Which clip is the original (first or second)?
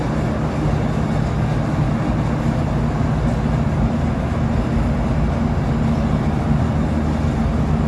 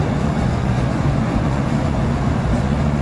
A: first